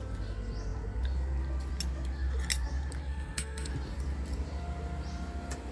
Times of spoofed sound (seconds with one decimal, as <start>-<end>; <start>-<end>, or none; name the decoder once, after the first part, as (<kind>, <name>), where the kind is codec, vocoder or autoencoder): 3.0-3.7 (codec, SNAC)